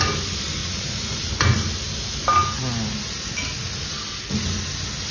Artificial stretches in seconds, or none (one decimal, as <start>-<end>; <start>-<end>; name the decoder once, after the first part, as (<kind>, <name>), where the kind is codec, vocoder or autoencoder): 0.6-1.3 (vocoder, Vocos)